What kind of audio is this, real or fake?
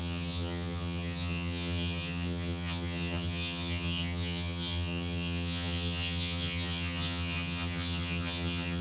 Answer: fake